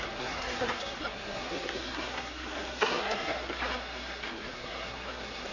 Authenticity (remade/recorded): remade